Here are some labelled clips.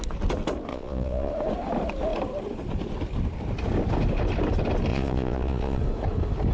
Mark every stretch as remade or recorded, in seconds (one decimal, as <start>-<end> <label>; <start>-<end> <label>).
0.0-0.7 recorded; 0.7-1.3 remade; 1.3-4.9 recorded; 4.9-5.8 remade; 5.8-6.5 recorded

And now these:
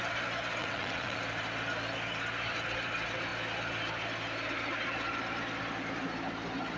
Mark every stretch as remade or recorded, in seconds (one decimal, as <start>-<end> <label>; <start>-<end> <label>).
0.0-0.6 recorded; 0.6-1.2 remade; 1.2-6.8 recorded

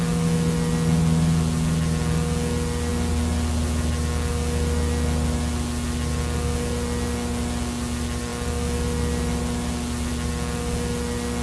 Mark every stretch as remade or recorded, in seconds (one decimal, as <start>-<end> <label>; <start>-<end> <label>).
0.0-11.4 recorded